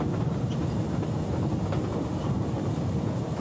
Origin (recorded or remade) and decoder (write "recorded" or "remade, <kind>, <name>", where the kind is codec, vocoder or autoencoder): recorded